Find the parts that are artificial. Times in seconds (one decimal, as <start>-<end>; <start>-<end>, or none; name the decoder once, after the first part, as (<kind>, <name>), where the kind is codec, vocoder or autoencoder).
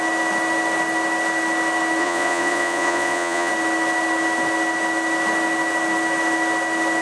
2.0-3.5 (vocoder, Vocos)